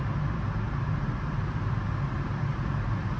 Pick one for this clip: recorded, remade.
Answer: recorded